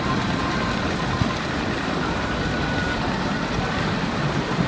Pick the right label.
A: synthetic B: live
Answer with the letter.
B